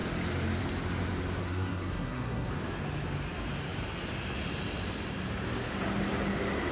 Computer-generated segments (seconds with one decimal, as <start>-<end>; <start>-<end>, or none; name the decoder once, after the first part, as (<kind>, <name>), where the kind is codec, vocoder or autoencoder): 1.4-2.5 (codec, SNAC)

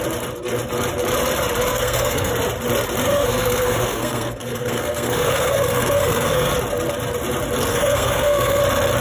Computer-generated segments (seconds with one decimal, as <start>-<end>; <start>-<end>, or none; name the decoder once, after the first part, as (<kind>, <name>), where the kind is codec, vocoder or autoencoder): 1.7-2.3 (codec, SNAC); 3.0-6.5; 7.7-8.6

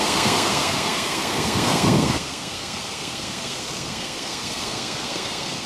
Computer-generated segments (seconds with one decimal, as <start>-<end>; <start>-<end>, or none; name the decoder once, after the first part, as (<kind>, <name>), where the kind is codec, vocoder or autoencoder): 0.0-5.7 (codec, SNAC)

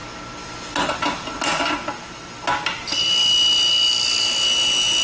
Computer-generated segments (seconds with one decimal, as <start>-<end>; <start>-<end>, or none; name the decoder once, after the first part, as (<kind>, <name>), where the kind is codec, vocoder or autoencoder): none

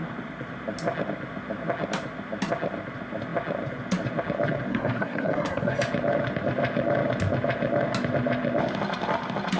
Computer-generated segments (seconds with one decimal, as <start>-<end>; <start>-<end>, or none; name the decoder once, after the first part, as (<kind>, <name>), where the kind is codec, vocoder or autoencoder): 4.7-5.8 (codec, SNAC)

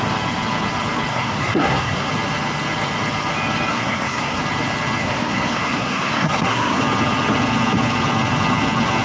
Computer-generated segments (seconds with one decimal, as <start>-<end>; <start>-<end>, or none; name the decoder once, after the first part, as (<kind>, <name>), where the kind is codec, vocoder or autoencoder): 1.1-2.1 (codec, SNAC); 3.7-4.4; 5.0-6.8

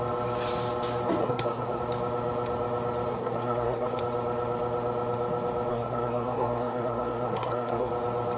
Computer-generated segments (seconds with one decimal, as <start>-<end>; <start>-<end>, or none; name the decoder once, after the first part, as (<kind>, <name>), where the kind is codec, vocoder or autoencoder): 1.2-1.8 (codec, SNAC); 3.1-4.0; 5.7-7.9

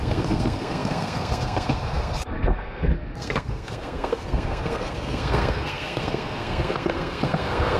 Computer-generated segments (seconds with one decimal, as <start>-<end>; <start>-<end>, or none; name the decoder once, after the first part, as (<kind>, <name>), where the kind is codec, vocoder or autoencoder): 0.0-7.8 (codec, SNAC)